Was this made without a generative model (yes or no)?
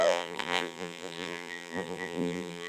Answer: no